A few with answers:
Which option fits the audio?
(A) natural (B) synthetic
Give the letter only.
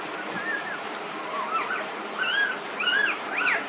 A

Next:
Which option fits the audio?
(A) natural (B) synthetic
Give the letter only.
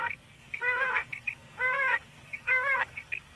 B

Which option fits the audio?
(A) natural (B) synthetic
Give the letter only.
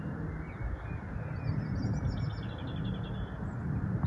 A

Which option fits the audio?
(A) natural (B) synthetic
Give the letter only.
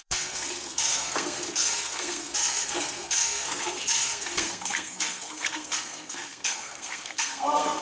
B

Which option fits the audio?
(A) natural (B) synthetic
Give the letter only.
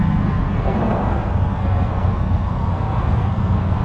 B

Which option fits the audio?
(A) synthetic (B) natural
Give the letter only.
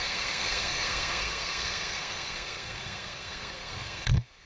A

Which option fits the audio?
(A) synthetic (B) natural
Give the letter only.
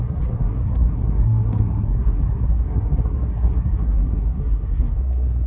A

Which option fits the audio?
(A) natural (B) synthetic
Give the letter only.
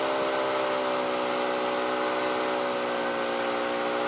A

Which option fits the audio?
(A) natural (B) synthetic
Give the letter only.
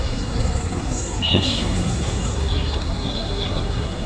B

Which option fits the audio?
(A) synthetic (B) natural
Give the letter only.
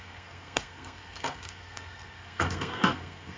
A